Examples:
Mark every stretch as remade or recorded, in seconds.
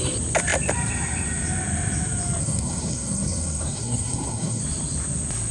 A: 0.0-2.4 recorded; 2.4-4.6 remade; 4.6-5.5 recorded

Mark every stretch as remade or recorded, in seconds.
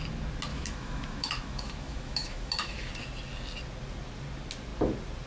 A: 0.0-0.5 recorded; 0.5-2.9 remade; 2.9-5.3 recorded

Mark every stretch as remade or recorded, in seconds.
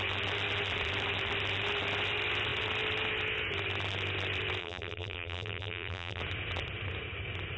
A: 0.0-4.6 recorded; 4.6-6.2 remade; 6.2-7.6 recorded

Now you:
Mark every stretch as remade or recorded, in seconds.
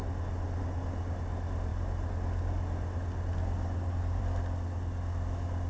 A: 0.0-5.7 recorded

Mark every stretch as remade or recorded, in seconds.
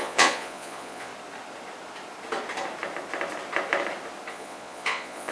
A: 0.0-1.1 remade; 1.1-4.3 recorded; 4.3-5.3 remade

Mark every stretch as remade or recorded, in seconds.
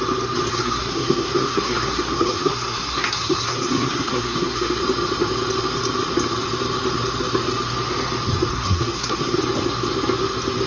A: 0.0-0.5 recorded; 0.5-4.8 remade; 4.8-8.5 recorded; 8.5-9.4 remade; 9.4-10.7 recorded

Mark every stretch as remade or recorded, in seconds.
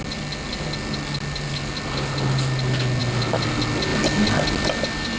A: 0.0-5.2 recorded